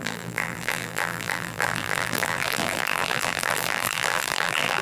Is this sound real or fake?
fake